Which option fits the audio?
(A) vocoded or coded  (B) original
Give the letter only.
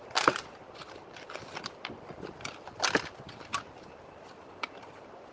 A